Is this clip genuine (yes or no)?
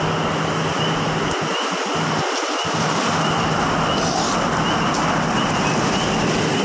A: yes